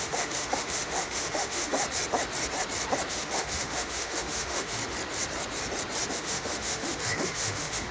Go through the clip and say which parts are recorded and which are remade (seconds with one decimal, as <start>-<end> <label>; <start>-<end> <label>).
0.0-1.8 remade; 1.8-3.1 recorded; 3.1-4.8 remade; 4.8-6.1 recorded; 6.1-7.9 remade